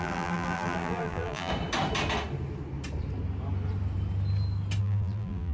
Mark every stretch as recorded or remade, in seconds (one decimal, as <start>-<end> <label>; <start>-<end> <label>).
0.0-1.5 remade; 1.5-4.8 recorded; 4.8-5.5 remade